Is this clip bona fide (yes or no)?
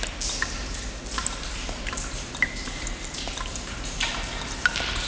yes